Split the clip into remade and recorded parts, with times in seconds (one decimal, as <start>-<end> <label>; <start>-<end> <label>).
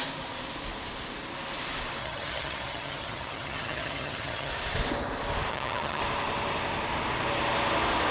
0.0-2.0 recorded; 2.0-4.5 remade; 4.5-5.5 recorded; 5.5-6.0 remade; 6.0-8.1 recorded